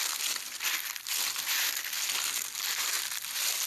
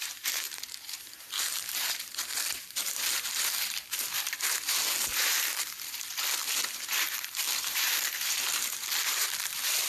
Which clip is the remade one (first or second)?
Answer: second